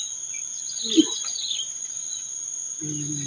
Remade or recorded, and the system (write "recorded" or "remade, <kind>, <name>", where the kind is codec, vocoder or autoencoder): recorded